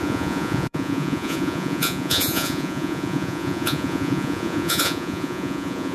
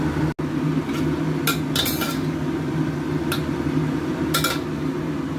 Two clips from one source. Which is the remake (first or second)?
first